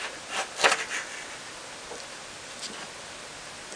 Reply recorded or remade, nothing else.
recorded